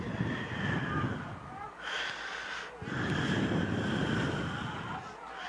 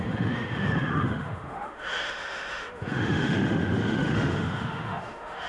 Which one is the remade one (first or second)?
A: second